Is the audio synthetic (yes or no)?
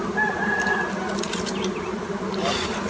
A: no